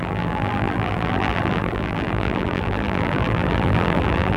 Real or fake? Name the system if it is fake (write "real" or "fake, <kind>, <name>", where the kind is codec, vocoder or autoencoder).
fake, vocoder, BigVGAN v2